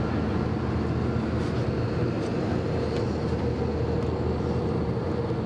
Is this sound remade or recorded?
recorded